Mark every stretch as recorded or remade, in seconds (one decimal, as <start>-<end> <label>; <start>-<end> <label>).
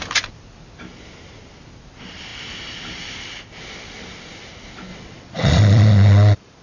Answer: 0.0-4.9 recorded; 4.9-5.6 remade; 5.6-6.6 recorded